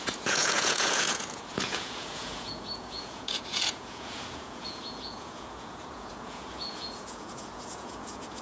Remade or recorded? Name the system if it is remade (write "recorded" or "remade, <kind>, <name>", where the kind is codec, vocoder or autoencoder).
remade, vocoder, Vocos